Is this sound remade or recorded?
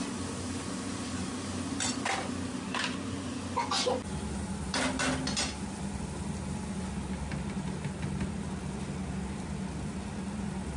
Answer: recorded